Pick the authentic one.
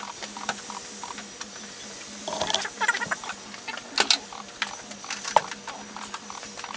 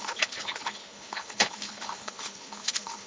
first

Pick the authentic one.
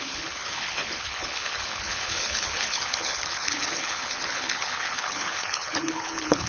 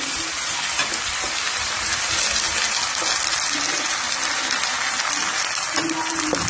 second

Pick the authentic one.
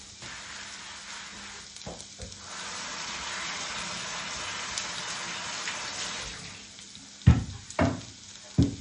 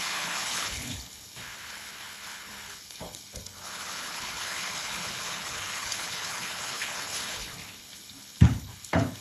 first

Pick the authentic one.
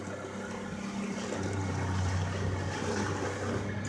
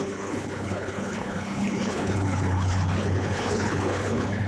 first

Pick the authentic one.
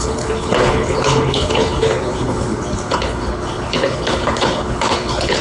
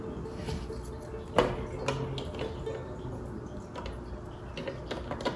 second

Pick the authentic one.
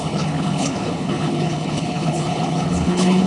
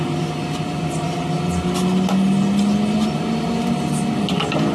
second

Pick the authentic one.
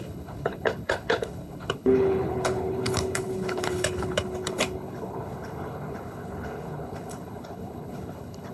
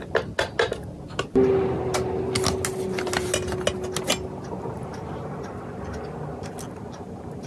second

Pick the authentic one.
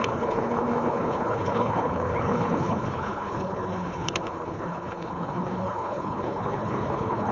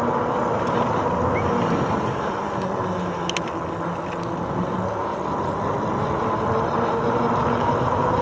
second